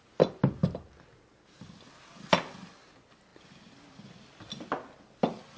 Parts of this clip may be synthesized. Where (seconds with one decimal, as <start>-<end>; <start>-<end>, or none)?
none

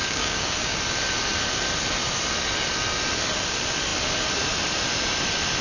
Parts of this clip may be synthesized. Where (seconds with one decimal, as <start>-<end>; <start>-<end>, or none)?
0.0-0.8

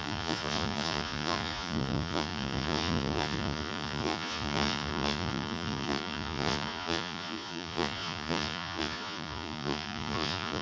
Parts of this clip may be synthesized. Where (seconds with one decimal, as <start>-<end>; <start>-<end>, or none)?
0.0-10.6

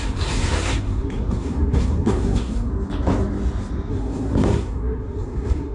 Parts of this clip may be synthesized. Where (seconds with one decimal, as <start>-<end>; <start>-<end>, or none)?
0.0-2.7; 3.9-5.7

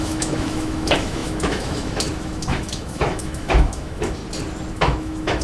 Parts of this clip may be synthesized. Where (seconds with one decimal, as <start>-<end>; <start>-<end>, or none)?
0.0-4.2; 4.7-5.4

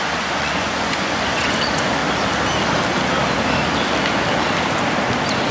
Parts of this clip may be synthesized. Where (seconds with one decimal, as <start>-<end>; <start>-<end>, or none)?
0.0-2.0

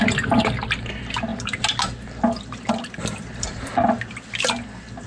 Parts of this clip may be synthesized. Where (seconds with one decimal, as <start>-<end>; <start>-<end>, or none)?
none

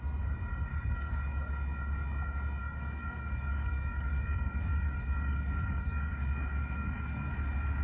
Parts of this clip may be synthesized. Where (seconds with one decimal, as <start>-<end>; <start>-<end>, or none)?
0.7-1.4; 2.6-7.3